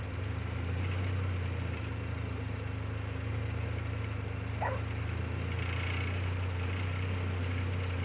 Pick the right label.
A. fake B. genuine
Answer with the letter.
B